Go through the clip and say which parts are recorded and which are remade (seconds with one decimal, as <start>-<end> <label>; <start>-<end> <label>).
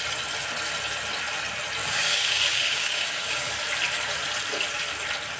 0.0-1.8 recorded; 1.8-3.5 remade; 3.5-5.4 recorded